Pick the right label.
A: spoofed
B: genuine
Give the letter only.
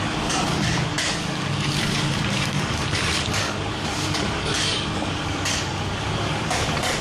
A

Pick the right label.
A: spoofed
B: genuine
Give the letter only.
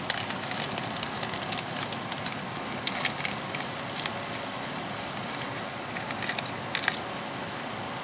B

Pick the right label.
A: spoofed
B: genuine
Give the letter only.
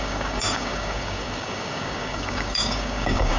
A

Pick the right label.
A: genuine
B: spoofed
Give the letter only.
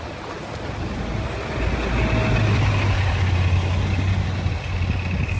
A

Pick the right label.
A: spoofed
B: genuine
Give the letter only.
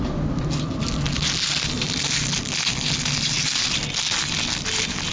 B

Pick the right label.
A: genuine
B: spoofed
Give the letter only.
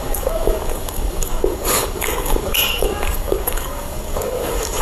B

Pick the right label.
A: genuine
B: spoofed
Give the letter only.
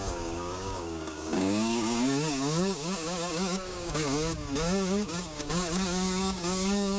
B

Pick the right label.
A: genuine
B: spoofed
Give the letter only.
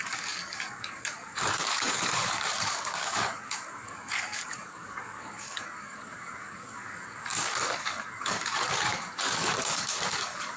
B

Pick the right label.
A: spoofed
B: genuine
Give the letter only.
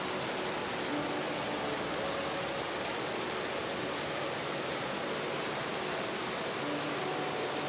B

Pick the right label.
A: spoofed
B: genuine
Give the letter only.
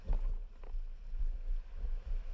B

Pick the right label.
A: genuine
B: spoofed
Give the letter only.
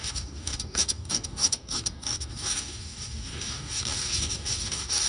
B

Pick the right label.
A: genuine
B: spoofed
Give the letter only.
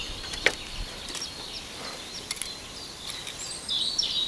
A